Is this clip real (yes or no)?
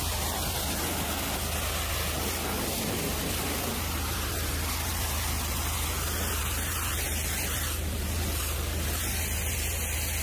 yes